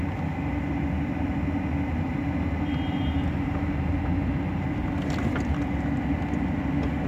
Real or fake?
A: real